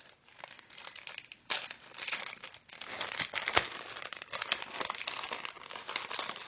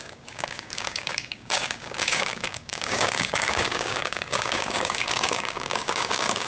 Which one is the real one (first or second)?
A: first